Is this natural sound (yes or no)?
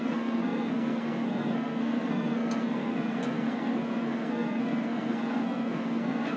no